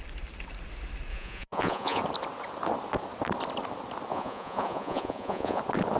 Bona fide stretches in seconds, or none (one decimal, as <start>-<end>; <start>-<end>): 0.0-1.1; 2.0-4.1; 5.6-6.0